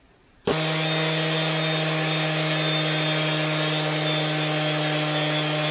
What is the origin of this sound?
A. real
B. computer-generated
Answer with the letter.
A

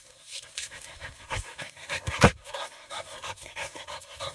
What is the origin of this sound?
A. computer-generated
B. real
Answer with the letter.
A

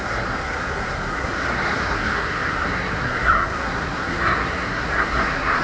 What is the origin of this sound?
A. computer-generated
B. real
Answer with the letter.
A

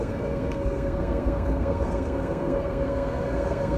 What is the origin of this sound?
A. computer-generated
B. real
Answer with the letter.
A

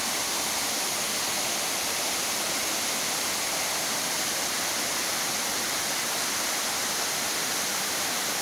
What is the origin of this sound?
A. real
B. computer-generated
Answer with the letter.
A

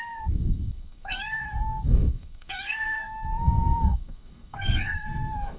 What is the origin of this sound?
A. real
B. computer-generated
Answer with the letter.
B